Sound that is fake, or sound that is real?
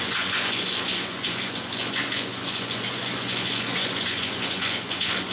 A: fake